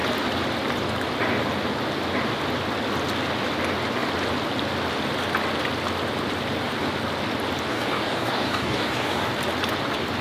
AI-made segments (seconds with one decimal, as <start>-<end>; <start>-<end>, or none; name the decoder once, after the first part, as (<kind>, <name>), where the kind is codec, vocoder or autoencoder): 7.7-9.3 (codec, DAC)